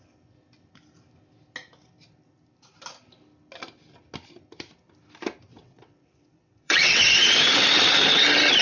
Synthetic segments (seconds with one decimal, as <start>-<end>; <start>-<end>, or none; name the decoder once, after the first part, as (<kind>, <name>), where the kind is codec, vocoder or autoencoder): 5.5-7.0 (vocoder, WaveNeXt)